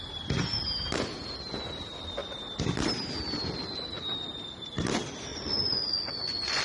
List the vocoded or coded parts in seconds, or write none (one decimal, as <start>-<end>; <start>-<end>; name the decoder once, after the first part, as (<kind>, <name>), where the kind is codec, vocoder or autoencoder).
5.3-6.6 (vocoder, Vocos)